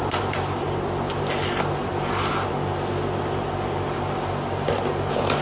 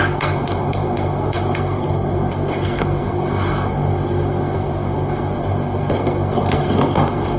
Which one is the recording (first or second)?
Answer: first